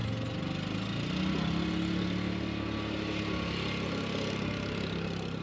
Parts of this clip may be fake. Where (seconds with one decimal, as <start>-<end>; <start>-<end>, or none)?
none